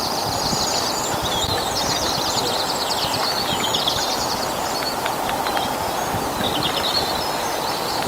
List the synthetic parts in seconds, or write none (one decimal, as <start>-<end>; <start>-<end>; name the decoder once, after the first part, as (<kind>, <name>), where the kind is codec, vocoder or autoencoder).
none